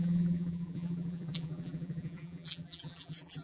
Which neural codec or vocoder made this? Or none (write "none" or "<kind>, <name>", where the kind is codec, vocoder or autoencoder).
vocoder, BigVGAN v2